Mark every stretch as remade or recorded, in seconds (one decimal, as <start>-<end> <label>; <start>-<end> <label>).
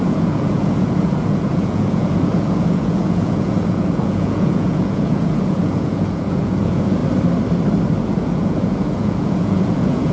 0.0-7.0 remade; 7.0-8.0 recorded; 8.0-10.1 remade